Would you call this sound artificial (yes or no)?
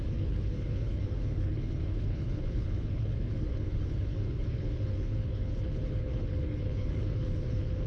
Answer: yes